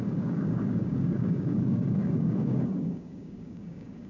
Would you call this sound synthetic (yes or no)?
yes